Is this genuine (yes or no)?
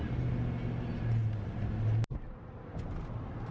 yes